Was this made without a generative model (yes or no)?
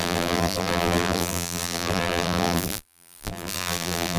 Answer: no